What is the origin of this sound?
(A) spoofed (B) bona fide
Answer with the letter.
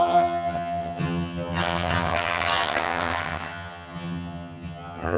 A